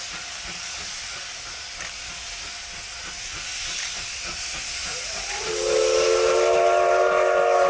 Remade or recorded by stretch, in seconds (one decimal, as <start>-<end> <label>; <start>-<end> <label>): 0.0-4.9 recorded; 4.9-5.5 remade; 5.5-7.7 recorded